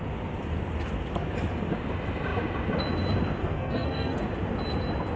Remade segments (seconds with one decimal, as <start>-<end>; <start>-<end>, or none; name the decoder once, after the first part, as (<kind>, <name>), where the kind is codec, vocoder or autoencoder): 3.4-4.2 (codec, SNAC)